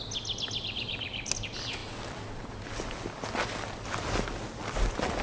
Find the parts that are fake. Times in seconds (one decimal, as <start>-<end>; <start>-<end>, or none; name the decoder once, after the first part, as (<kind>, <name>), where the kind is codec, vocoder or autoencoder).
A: none